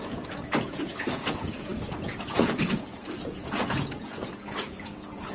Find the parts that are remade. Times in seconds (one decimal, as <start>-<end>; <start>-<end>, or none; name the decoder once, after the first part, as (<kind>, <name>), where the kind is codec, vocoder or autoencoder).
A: 0.0-5.3 (vocoder, Vocos)